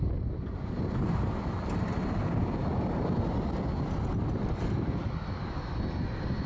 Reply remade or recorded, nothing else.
recorded